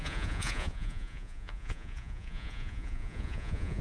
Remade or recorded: remade